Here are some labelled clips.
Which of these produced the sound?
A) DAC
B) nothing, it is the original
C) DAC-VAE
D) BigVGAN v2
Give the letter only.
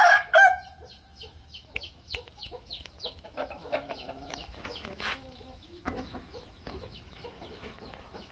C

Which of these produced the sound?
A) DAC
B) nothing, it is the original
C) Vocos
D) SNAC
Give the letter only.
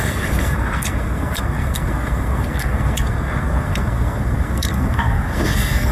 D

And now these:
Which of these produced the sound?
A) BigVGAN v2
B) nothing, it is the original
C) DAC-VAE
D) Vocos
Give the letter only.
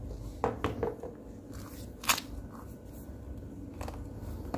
B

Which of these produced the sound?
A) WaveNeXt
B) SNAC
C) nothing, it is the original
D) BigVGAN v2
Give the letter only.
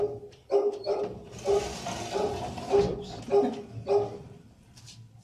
C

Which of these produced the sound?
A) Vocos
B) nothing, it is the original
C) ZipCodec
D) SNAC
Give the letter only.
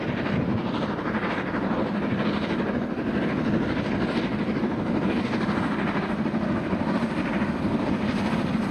B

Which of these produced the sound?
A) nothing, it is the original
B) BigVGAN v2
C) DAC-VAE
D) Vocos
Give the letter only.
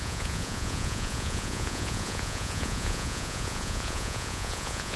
D